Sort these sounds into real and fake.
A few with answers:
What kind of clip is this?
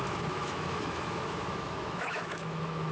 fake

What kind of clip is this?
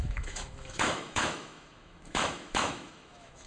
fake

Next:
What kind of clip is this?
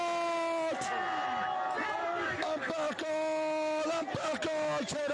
real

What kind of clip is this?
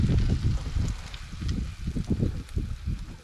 real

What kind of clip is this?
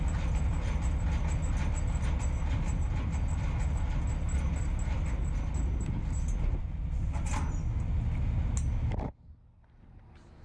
real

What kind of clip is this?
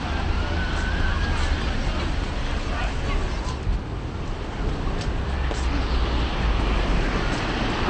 real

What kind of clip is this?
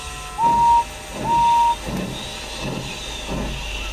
real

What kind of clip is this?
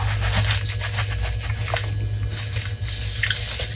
real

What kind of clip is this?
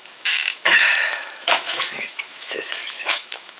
fake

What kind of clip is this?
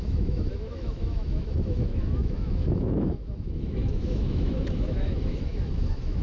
fake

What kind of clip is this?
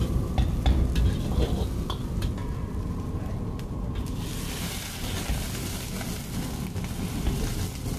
real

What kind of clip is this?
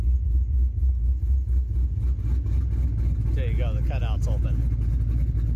real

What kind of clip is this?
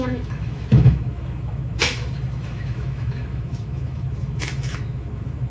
fake